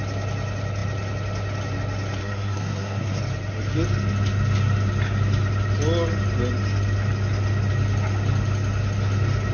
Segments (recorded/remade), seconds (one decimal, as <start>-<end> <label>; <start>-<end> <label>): 0.0-2.2 recorded; 2.2-3.2 remade; 3.2-9.5 recorded